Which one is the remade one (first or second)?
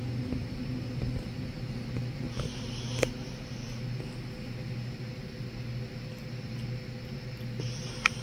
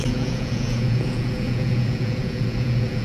second